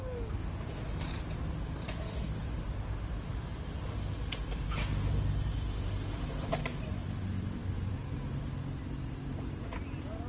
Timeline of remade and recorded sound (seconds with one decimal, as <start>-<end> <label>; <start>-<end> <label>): 0.0-7.6 recorded; 7.6-8.6 remade; 8.6-10.3 recorded